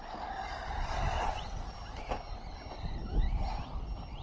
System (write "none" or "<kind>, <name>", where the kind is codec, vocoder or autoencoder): none